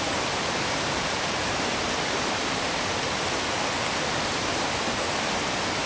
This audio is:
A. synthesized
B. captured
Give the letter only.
B